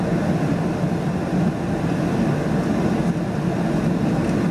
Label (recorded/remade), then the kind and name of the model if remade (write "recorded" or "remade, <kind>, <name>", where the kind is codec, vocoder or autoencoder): recorded